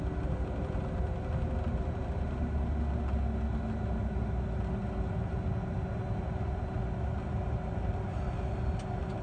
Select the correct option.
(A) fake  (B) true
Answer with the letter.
B